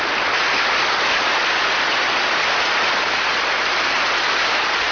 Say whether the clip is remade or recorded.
recorded